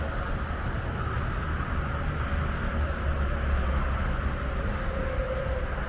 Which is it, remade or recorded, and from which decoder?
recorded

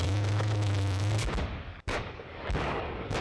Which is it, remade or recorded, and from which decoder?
remade, codec, DAC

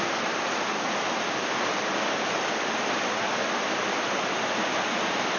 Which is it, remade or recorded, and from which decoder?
recorded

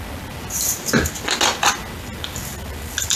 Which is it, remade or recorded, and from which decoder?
recorded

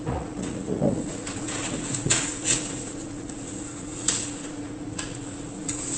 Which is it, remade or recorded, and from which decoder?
remade, vocoder, Vocos